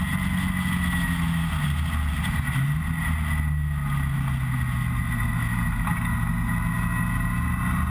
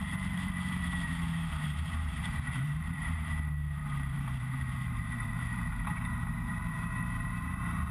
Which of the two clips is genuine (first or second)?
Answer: first